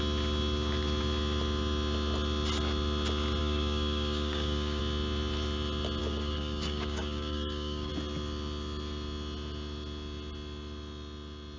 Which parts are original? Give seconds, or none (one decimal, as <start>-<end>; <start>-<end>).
0.0-3.4; 4.8-6.0; 7.9-11.6